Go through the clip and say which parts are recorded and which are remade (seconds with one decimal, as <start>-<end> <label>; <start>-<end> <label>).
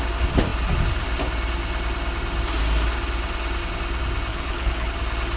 0.0-4.3 recorded; 4.3-4.9 remade; 4.9-5.4 recorded